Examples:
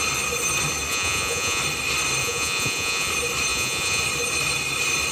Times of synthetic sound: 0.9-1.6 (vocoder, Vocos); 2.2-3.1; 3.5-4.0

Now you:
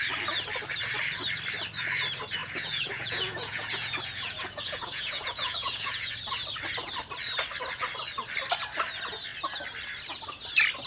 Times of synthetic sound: 2.4-6.1 (vocoder, Vocos)

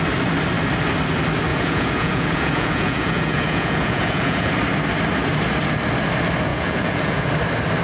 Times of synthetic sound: 1.5-4.5 (vocoder, Vocos); 6.5-7.3